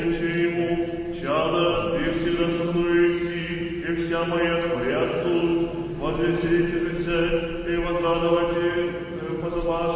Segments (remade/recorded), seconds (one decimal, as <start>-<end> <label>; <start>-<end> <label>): 0.0-10.0 recorded